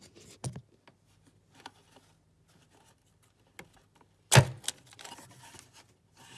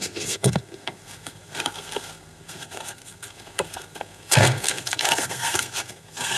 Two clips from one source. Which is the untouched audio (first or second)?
first